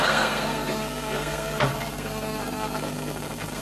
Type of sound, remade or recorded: remade